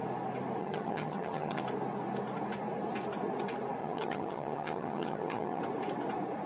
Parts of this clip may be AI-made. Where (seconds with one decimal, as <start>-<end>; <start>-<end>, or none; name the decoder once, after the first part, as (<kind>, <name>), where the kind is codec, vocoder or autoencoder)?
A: 0.6-1.6 (vocoder, HiFi-GAN); 3.8-5.6